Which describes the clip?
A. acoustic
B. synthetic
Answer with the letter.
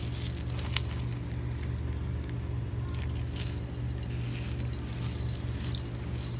A